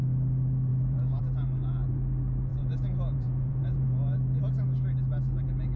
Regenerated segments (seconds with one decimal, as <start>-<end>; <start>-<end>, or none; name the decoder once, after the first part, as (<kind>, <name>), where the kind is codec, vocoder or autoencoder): 0.7-1.2 (vocoder, Vocos); 2.5-4.4